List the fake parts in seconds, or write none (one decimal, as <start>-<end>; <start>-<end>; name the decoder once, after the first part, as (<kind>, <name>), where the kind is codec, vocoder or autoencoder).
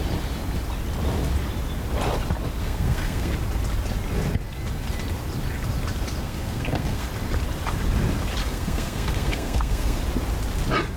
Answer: 2.6-3.3 (codec, SNAC); 6.2-7.1; 8.4-10.0